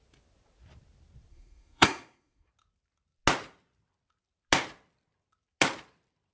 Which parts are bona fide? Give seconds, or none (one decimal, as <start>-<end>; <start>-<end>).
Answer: 0.0-1.3; 2.5-6.3